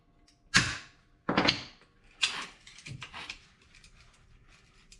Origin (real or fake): real